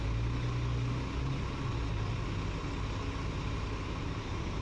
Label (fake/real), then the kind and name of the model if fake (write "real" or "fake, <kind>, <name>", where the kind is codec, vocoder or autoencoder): real